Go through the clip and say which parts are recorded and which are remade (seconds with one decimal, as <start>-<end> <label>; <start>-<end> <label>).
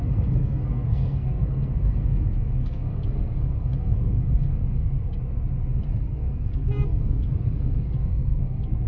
0.0-5.2 remade; 5.2-5.7 recorded; 5.7-8.9 remade